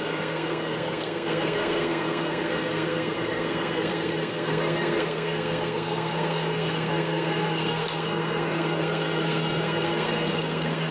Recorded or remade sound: remade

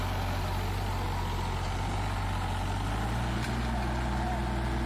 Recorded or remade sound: recorded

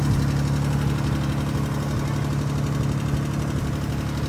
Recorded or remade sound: recorded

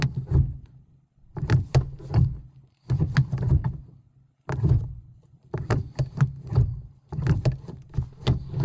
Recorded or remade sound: recorded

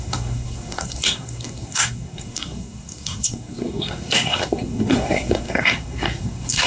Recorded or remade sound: remade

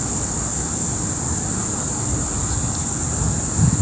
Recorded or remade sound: recorded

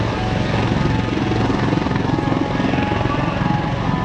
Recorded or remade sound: recorded